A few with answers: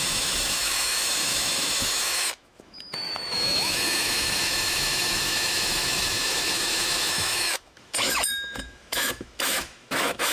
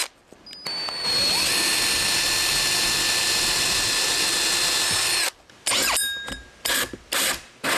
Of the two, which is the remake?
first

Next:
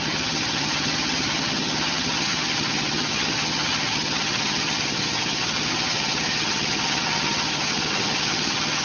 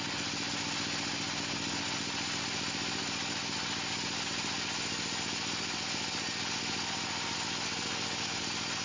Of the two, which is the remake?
first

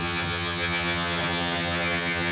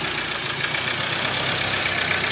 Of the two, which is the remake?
first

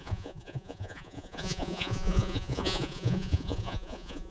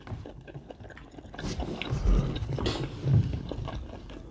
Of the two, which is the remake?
first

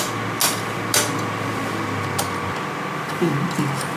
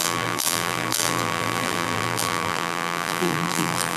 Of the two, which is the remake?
second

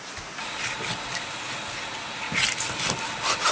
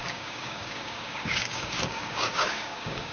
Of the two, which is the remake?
second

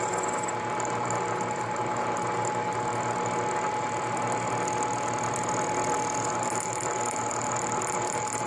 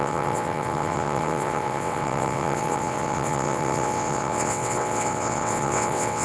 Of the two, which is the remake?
second